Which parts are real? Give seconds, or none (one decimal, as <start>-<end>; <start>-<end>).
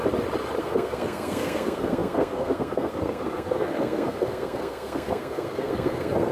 0.0-0.6